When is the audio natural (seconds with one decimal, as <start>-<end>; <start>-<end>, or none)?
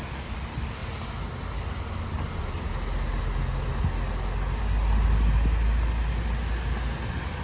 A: 0.0-7.4